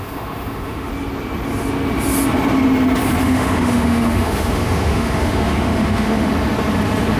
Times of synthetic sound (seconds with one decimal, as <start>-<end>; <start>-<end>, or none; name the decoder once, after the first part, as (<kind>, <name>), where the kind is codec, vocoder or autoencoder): 0.0-0.9 (autoencoder, DAC-VAE); 3.2-6.3